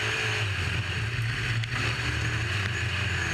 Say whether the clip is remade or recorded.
recorded